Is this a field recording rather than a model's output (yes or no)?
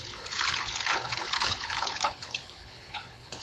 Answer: no